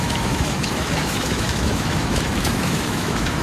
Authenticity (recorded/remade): remade